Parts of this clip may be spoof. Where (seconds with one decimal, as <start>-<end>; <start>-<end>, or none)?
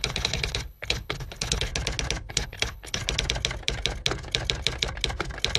0.0-1.7; 2.3-3.0